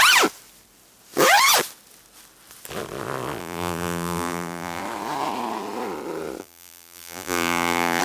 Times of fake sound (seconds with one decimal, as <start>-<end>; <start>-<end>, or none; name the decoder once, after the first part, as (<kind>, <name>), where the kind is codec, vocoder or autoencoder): 3.4-4.8 (vocoder, BigVGAN v2); 6.4-8.0